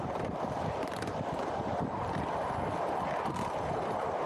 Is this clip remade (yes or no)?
no